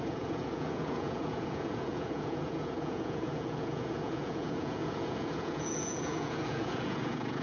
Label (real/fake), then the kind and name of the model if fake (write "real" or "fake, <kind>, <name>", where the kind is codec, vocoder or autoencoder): fake, vocoder, Vocos